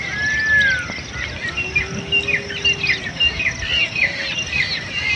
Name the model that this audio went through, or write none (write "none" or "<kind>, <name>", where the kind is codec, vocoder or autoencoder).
none